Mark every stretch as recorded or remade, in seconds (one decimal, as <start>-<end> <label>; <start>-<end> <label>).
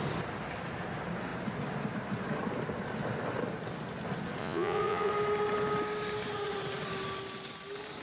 0.0-4.4 recorded; 4.4-5.1 remade; 5.1-8.0 recorded